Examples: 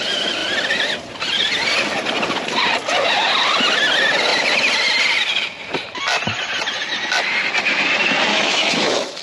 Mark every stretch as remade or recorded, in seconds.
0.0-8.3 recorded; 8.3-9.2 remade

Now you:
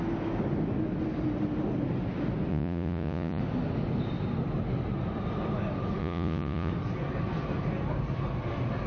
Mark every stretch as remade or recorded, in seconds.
0.0-2.5 recorded; 2.5-3.4 remade; 3.4-6.0 recorded; 6.0-6.7 remade; 6.7-8.9 recorded

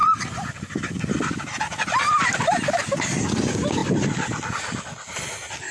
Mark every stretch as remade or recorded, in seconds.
0.0-2.7 remade; 2.7-5.7 recorded

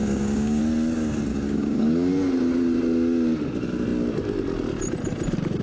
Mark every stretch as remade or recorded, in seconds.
0.0-0.6 remade; 0.6-1.3 recorded; 1.3-2.1 remade; 2.1-5.6 recorded

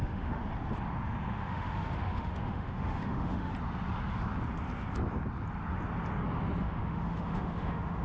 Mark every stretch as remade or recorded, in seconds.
0.0-0.4 remade; 0.4-1.3 recorded; 1.3-3.5 remade; 3.5-6.6 recorded; 6.6-8.0 remade

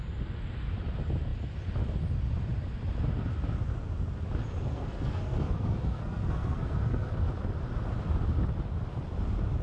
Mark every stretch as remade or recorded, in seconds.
0.0-4.6 recorded; 4.6-7.3 remade; 7.3-9.6 recorded

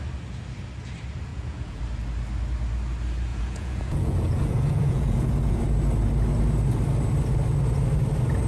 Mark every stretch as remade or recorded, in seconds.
0.0-1.3 recorded; 1.3-1.8 remade; 1.8-3.3 recorded; 3.3-5.6 remade; 5.6-8.5 recorded